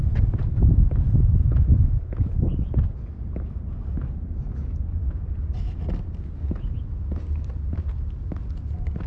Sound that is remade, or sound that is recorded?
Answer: recorded